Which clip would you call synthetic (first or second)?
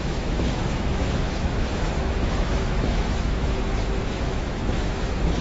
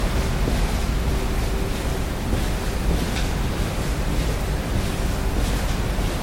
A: first